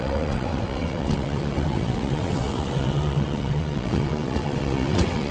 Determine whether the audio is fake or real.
fake